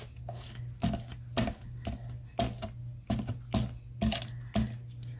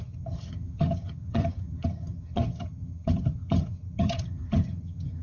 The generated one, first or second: second